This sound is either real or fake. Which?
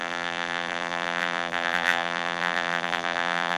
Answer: fake